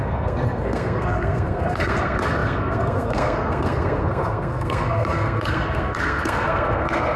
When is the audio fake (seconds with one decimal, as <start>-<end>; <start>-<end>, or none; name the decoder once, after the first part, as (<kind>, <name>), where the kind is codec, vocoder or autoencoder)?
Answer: 0.0-7.2 (codec, SNAC)